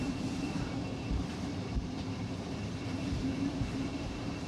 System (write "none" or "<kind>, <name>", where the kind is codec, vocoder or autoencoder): vocoder, BigVGAN v2